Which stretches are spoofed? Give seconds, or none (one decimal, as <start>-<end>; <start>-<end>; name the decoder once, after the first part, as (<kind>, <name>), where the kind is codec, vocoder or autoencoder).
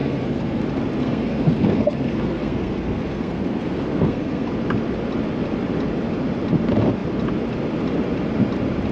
0.0-0.6 (codec, SNAC); 1.0-4.5